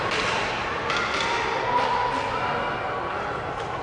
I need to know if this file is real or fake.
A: real